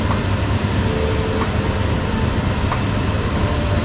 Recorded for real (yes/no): yes